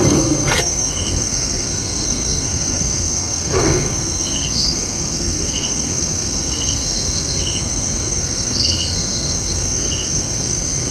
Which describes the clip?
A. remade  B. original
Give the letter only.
A